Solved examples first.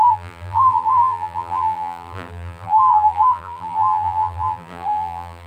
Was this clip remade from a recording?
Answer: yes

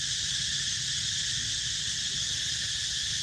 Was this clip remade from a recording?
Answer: no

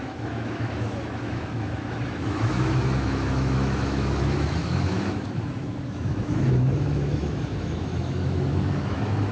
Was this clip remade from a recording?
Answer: yes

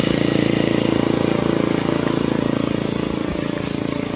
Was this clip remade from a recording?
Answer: no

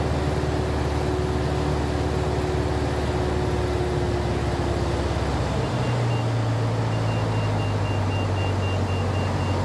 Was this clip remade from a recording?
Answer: no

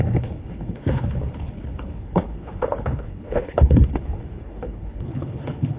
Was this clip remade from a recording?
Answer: yes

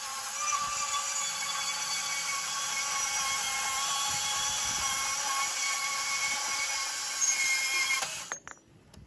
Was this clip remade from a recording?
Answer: no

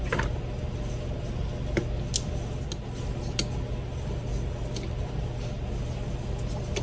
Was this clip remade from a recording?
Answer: no